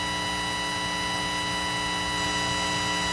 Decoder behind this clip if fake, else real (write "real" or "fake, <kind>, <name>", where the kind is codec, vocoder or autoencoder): real